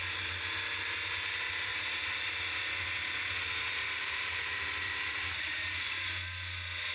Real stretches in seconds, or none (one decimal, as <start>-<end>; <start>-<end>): 0.0-6.9